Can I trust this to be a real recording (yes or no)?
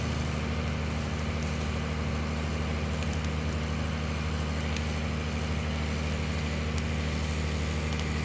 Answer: yes